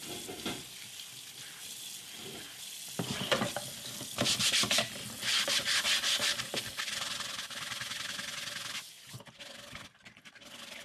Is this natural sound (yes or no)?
yes